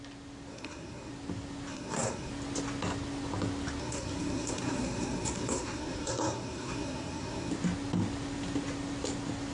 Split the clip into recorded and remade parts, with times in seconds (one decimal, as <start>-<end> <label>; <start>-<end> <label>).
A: 0.0-0.5 recorded; 0.5-1.1 remade; 1.1-1.7 recorded; 1.7-2.3 remade; 2.3-3.8 recorded; 3.8-7.5 remade; 7.5-9.5 recorded